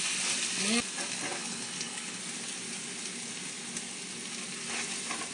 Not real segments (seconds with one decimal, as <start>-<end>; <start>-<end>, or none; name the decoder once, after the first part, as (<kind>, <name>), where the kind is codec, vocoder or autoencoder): 1.4-2.2 (codec, HILCodec)